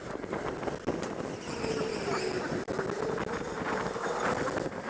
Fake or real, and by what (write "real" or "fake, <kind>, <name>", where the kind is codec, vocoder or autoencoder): real